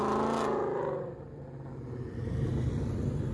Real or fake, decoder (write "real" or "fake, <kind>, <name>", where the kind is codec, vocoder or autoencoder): real